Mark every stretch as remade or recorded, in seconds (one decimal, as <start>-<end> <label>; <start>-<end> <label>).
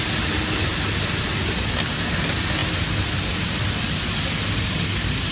0.0-5.3 recorded